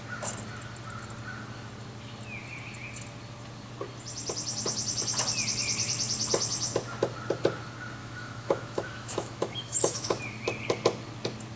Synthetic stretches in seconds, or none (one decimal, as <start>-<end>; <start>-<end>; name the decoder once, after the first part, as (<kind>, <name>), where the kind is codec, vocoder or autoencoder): 8.0-10.2 (autoencoder, DAC-VAE)